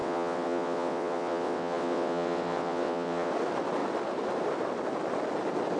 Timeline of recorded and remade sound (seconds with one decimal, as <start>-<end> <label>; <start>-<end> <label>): 0.0-3.3 remade; 3.3-5.8 recorded